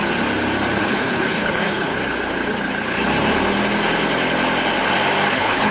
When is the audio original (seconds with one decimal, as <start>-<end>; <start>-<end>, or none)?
0.0-0.8; 1.9-5.3